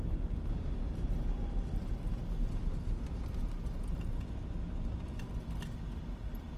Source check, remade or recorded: recorded